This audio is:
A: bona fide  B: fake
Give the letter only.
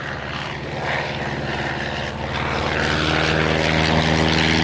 A